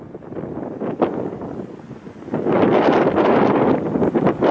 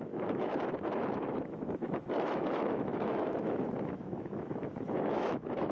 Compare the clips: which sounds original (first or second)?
first